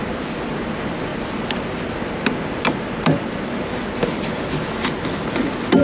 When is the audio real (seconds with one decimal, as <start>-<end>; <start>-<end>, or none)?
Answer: 0.0-5.8